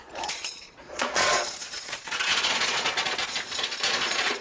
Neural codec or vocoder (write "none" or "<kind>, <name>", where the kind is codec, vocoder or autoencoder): vocoder, Vocos